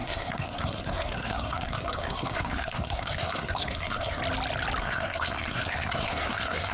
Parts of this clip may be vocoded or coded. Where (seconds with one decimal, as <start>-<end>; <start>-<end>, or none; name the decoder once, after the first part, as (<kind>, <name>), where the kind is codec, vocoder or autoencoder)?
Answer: 0.0-4.2 (codec, SNAC); 4.8-6.7